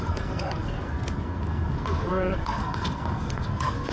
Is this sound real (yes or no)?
no